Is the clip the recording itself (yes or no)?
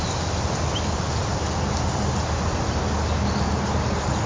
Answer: yes